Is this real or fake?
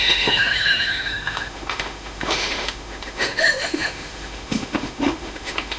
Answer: fake